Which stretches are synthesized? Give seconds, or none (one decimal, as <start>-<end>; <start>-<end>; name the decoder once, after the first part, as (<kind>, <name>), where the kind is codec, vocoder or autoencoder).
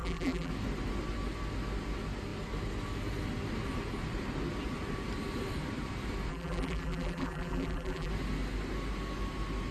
0.0-0.5 (vocoder, BigVGAN v2); 6.3-8.1